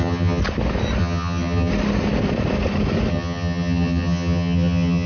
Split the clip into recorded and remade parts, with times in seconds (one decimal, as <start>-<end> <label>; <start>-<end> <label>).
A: 0.0-0.4 remade; 0.4-1.0 recorded; 1.0-1.7 remade; 1.7-3.1 recorded; 3.1-5.1 remade